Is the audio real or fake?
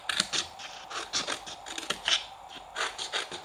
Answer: real